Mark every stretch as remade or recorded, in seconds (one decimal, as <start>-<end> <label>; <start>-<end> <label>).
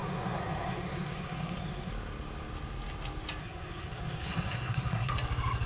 0.0-1.9 remade; 1.9-3.4 recorded; 3.4-5.1 remade; 5.1-5.7 recorded